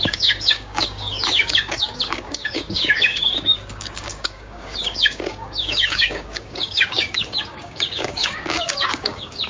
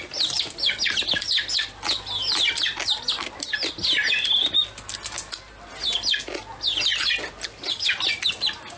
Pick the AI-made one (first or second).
first